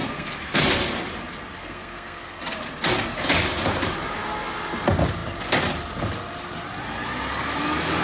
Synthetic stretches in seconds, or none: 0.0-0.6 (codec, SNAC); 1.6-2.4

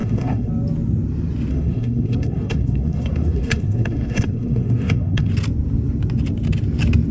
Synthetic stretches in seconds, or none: 0.0-0.5 (codec, SNAC); 1.5-5.3

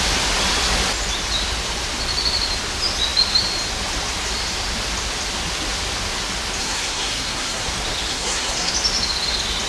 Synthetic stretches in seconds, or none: 6.6-7.7 (codec, SNAC); 8.1-8.7

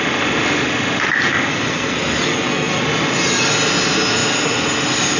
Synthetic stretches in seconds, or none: 1.5-2.8 (codec, SNAC)

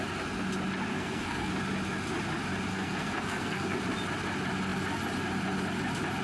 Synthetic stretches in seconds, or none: 0.9-1.5 (codec, SNAC); 2.7-3.8

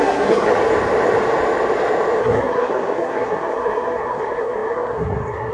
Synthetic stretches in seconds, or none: 0.0-0.5 (codec, SNAC); 2.2-5.5